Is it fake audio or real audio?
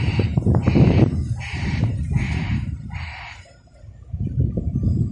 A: fake